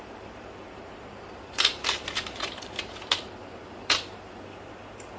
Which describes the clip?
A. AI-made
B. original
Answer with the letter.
A